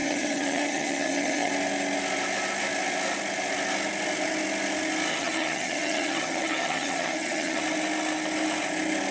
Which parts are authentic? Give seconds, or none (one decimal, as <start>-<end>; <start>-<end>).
1.5-5.1; 7.6-9.1